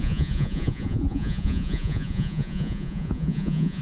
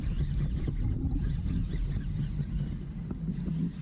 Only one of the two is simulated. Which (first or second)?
first